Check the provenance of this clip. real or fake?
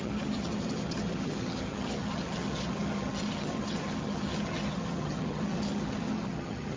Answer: fake